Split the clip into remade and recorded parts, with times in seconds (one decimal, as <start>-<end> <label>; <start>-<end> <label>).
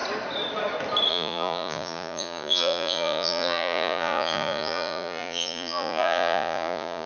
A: 0.0-1.1 recorded; 1.1-7.1 remade